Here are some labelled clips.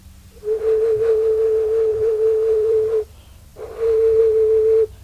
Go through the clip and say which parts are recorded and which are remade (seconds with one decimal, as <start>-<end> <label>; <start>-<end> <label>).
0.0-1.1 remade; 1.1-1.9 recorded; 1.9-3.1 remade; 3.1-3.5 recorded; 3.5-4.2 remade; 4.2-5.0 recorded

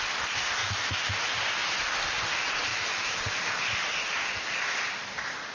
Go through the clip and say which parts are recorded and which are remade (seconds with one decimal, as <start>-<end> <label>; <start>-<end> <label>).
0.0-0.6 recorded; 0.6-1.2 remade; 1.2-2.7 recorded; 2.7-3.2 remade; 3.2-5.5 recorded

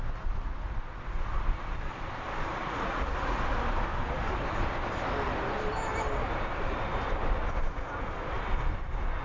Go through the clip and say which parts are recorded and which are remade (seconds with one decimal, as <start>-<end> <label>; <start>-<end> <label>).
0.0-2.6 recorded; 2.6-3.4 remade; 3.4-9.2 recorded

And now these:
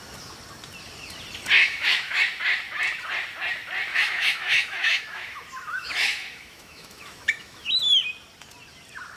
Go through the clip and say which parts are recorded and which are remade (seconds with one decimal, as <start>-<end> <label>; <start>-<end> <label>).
0.0-1.6 recorded; 1.6-2.2 remade; 2.2-3.9 recorded; 3.9-7.8 remade; 7.8-9.2 recorded

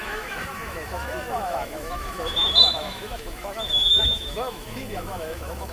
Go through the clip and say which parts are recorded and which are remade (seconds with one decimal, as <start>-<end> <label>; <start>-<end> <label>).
0.0-5.7 remade

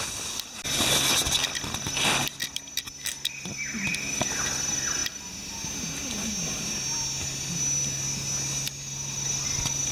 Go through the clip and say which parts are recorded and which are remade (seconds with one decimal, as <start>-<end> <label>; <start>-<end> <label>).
0.0-9.9 recorded

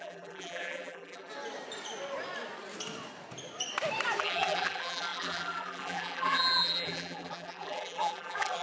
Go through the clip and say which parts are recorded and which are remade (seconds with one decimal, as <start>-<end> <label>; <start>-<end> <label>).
0.0-1.3 remade; 1.3-4.2 recorded; 4.2-8.6 remade

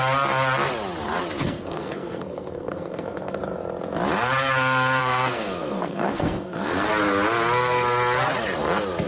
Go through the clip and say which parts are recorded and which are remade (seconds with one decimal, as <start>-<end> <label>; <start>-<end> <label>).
0.0-1.4 recorded; 1.4-3.4 remade; 3.4-5.0 recorded; 5.0-6.9 remade; 6.9-9.1 recorded